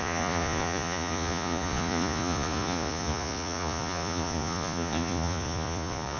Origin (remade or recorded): remade